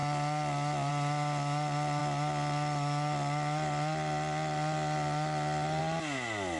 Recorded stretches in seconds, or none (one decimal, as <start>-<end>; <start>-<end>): 0.0-6.6